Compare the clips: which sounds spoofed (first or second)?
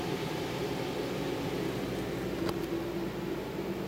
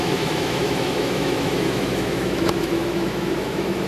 second